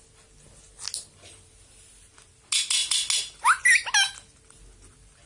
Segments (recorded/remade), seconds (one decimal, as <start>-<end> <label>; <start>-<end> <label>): 0.0-5.3 recorded

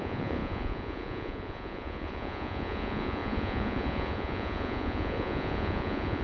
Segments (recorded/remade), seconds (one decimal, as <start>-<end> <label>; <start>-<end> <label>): 0.0-6.2 remade

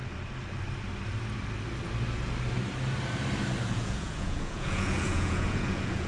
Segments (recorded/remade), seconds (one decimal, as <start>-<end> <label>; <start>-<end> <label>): 0.0-3.6 recorded; 3.6-6.1 remade

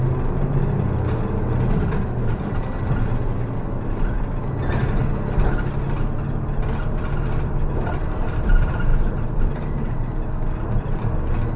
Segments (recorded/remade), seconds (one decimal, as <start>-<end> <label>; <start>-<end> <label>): 0.0-11.6 recorded

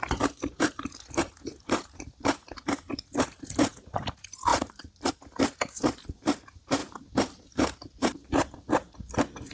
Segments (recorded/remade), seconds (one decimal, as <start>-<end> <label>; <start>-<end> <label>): 0.0-4.5 recorded; 4.5-5.1 remade; 5.1-9.5 recorded